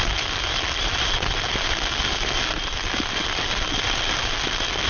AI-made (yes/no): no